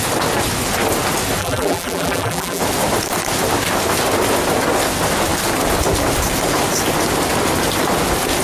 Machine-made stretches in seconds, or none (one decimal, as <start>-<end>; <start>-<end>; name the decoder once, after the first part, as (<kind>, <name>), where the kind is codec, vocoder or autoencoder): 1.4-2.6 (vocoder, BigVGAN v2)